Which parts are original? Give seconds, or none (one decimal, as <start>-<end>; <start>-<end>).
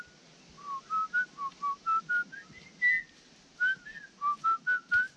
0.0-5.2